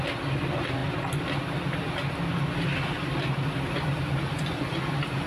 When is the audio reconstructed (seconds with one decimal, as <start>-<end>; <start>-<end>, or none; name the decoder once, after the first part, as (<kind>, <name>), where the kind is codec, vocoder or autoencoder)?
none